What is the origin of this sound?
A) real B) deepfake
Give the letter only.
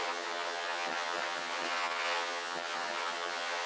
B